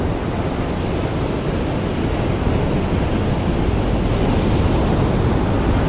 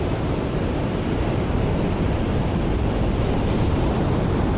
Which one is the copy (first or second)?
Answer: second